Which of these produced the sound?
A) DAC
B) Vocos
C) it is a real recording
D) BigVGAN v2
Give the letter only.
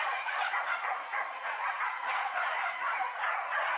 B